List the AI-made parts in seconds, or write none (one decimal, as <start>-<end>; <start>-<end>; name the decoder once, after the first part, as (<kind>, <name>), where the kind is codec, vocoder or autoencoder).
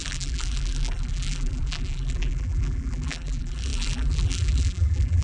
0.0-5.2 (vocoder, BigVGAN v2)